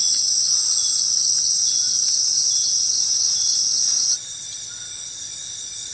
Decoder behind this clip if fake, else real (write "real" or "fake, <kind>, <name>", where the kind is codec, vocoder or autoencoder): real